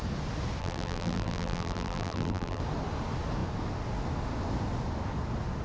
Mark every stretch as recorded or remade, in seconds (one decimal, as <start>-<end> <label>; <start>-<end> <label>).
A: 0.0-0.6 recorded; 0.6-2.6 remade; 2.6-5.6 recorded